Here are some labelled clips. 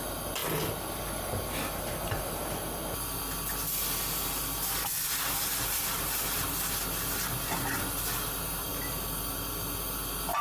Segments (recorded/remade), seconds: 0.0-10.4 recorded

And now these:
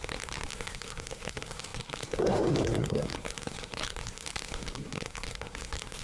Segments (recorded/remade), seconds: 0.0-6.0 remade

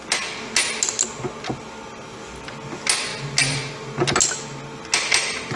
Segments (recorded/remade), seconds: 0.0-5.6 recorded